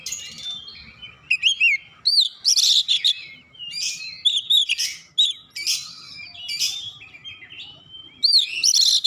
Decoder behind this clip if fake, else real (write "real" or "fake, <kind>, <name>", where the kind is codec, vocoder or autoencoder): real